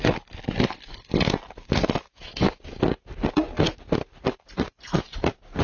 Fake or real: real